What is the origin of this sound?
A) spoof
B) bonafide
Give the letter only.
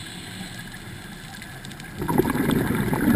B